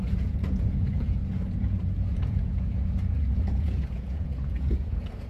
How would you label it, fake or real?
fake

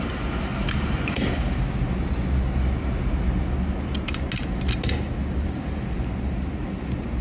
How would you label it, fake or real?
real